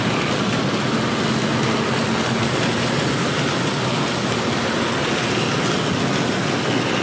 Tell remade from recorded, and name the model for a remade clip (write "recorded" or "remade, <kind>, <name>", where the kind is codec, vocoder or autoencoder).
recorded